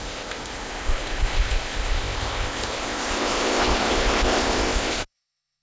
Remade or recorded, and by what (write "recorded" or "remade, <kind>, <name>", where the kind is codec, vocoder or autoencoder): remade, codec, ZipCodec